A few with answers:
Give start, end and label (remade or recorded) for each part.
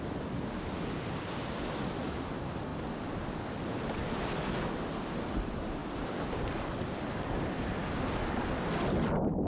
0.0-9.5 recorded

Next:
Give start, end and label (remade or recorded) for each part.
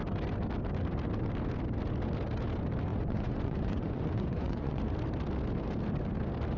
0.0-2.9 recorded; 2.9-4.8 remade; 4.8-6.6 recorded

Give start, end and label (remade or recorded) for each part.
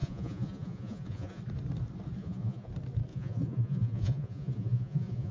0.0-1.4 remade; 1.4-2.2 recorded; 2.2-2.7 remade; 2.7-3.1 recorded; 3.1-5.3 remade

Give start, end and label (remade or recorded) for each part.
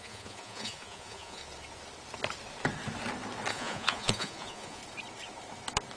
0.0-1.4 remade; 1.4-3.5 recorded; 3.5-4.8 remade; 4.8-6.0 recorded